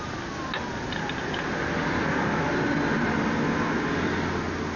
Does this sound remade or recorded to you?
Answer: recorded